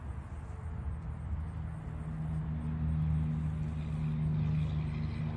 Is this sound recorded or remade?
recorded